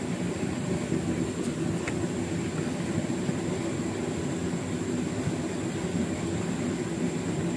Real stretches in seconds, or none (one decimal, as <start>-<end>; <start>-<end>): 0.0-7.6

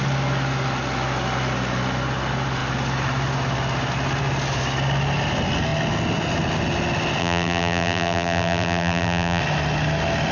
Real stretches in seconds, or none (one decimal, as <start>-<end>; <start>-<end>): 0.0-7.2; 9.4-10.3

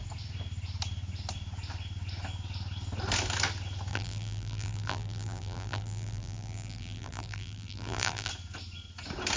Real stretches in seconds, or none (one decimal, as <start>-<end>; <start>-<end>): 0.0-3.9; 8.3-9.4

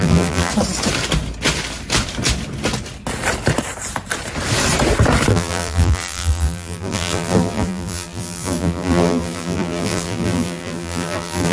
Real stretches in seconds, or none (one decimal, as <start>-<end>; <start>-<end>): 0.5-5.3

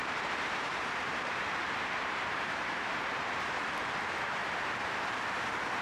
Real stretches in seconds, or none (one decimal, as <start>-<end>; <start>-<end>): 3.4-4.4; 5.0-5.8

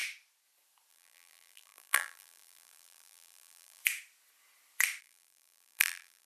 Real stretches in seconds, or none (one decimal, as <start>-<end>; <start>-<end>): 0.0-0.9; 3.8-5.0